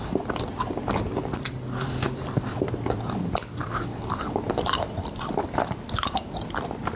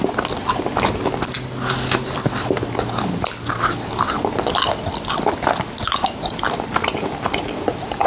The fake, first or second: first